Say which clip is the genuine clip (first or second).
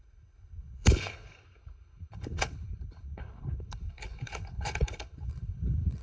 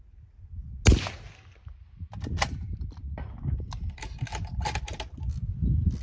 second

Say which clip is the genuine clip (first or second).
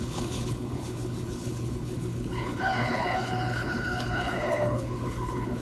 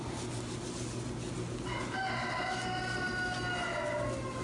second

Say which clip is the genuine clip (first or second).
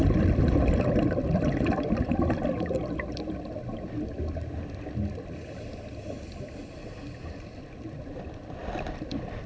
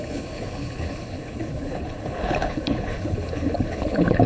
first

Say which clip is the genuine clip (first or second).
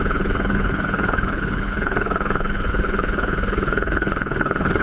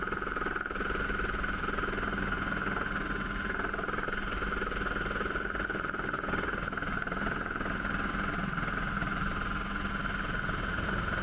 second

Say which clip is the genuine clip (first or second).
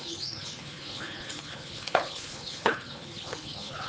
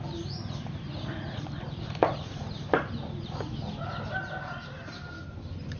second